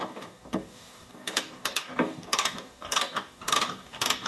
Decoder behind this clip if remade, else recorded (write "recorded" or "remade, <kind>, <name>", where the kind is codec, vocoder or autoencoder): remade, codec, DAC